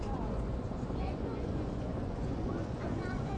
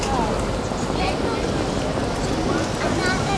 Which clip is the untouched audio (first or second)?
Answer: second